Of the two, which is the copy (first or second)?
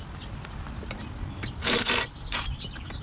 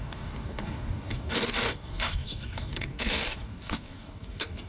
second